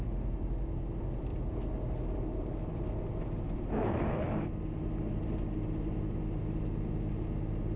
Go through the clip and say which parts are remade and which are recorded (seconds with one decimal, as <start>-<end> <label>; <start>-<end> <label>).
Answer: 0.0-7.8 recorded